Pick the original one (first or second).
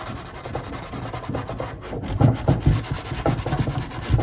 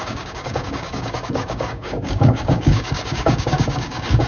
first